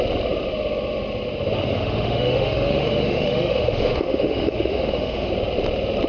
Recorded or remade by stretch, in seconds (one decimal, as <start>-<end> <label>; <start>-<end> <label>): 0.0-1.6 recorded; 1.6-5.3 remade; 5.3-6.1 recorded